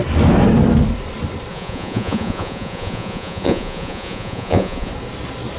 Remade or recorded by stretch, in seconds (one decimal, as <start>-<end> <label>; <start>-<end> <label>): 0.0-1.5 recorded; 1.5-4.9 remade; 4.9-5.6 recorded